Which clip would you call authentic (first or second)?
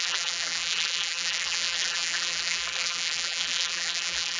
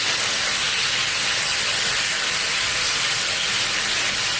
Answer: second